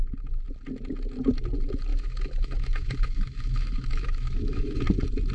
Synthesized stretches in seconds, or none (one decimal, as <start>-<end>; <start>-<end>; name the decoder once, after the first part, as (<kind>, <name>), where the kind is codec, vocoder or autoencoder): 1.9-4.8 (autoencoder, DAC-VAE)